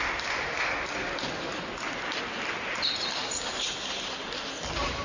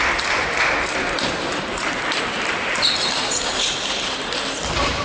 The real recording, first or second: first